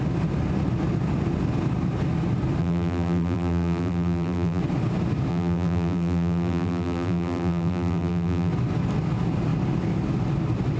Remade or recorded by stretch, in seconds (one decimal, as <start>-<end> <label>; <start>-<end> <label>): 0.0-2.6 recorded; 2.6-4.6 remade; 4.6-5.3 recorded; 5.3-8.5 remade; 8.5-10.8 recorded